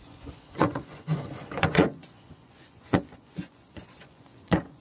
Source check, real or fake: fake